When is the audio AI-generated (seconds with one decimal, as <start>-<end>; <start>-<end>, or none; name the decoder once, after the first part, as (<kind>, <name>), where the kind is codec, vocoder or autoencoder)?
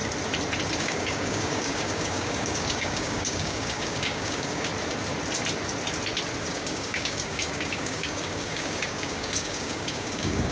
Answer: 0.8-4.7 (codec, DAC); 6.4-10.5